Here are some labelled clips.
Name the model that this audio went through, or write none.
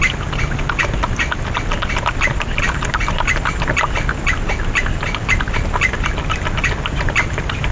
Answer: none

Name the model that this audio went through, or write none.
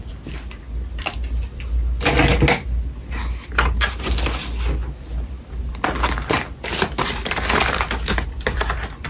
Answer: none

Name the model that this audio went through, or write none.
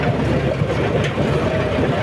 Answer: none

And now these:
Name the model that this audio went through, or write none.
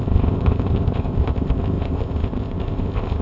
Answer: codec, ZipCodec